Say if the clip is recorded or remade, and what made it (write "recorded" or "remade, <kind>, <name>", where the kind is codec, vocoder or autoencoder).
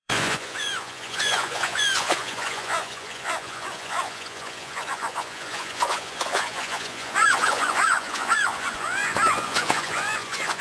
remade, vocoder, Vocos